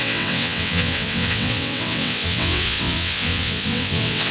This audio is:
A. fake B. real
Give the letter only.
A